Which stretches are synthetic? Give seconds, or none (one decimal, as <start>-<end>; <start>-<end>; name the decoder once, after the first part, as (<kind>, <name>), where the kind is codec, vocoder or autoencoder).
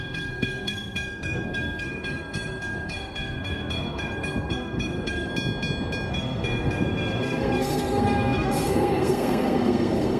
0.0-5.3 (codec, SNAC); 6.1-10.2